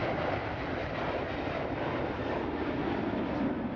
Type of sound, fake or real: real